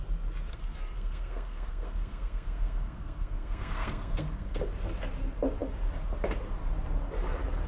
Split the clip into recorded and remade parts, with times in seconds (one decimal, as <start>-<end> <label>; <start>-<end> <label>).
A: 0.0-0.5 recorded; 0.5-4.6 remade; 4.6-7.7 recorded